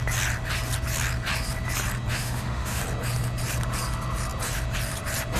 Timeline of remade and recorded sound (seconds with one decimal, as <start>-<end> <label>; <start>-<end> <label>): 0.0-2.1 recorded; 2.1-2.8 remade; 2.8-5.4 recorded